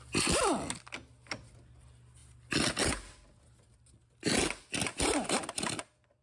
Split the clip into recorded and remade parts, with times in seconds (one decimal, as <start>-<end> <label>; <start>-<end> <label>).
0.0-6.2 recorded